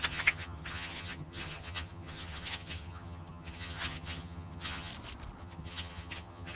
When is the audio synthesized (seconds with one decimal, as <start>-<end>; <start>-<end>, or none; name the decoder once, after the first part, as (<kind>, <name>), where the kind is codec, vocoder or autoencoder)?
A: 0.0-4.9 (vocoder, HiFi-GAN); 5.4-6.6